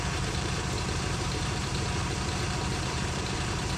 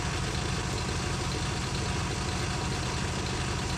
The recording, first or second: second